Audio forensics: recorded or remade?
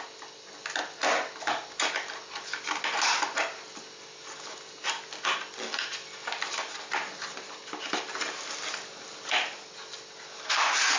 recorded